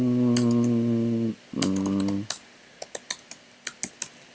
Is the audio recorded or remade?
recorded